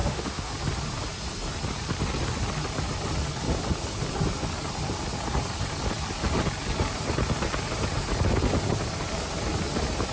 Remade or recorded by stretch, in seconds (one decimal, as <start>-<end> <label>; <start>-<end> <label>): 0.0-0.5 remade; 0.5-10.1 recorded